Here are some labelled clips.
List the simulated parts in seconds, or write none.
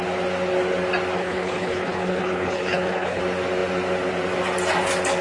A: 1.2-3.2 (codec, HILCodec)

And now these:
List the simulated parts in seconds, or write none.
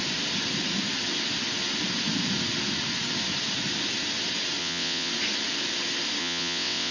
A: 4.6-5.1 (vocoder, WaveNeXt); 6.2-6.9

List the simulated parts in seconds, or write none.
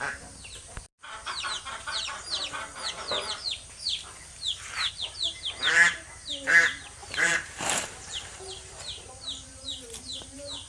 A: 0.0-0.9 (vocoder, BigVGAN v2); 4.9-10.7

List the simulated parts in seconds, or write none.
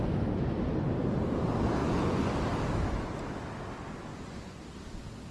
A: 1.8-2.3 (vocoder, Vocos); 4.1-4.6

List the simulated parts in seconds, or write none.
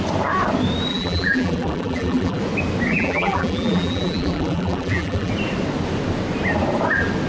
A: 0.9-2.4 (vocoder, BigVGAN v2); 2.9-5.3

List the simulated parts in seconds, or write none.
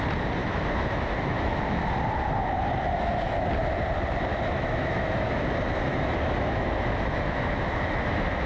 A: 0.4-1.9 (autoencoder, DAC-VAE); 4.3-5.4; 5.9-8.5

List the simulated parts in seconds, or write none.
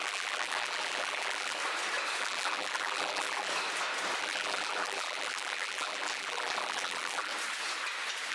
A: 0.0-1.6 (vocoder, BigVGAN v2); 2.2-3.5; 4.2-7.3